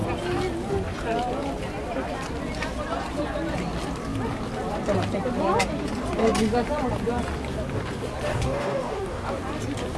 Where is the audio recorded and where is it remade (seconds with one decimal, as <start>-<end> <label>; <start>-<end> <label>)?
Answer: 0.0-8.3 recorded; 8.3-9.3 remade; 9.3-10.0 recorded